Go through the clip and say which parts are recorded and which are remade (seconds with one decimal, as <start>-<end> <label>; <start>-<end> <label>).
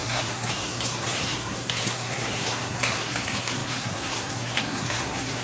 0.0-5.4 remade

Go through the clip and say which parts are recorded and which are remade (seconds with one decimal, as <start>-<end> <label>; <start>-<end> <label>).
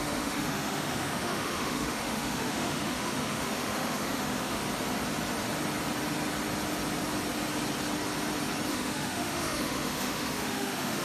0.0-4.6 remade; 4.6-8.7 recorded; 8.7-11.0 remade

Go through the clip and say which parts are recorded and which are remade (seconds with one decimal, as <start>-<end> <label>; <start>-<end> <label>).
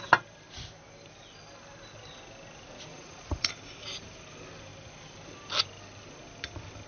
0.0-2.9 recorded; 2.9-3.5 remade; 3.5-6.9 recorded